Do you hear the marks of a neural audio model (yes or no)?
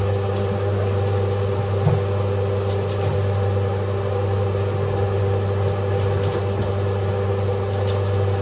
no